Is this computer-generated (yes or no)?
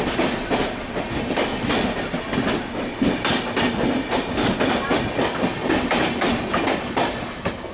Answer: no